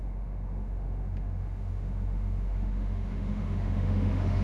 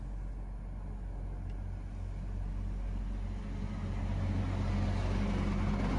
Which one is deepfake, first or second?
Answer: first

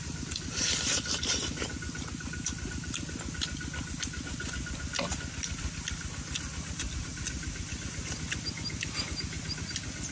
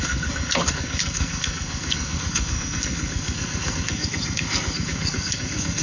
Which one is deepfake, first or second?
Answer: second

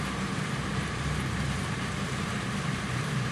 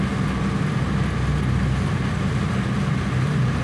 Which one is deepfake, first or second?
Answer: first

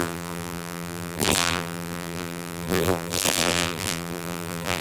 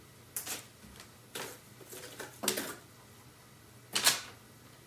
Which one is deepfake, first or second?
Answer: first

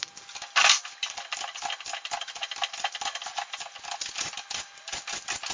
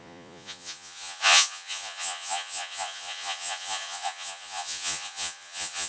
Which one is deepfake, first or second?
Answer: second